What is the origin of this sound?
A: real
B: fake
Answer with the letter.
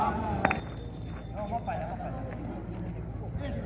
A